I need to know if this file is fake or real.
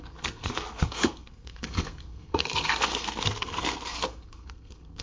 fake